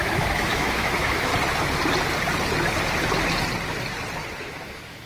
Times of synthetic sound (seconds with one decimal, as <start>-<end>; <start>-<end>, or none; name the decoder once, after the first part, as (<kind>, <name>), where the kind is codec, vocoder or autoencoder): 0.0-1.3 (autoencoder, DAC-VAE); 4.4-5.1